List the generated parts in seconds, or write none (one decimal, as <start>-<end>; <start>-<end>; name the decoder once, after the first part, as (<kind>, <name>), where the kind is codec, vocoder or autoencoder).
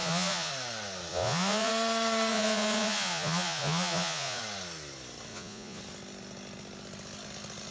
0.0-0.5 (vocoder, Vocos); 1.1-1.7; 2.3-4.4; 5.3-5.8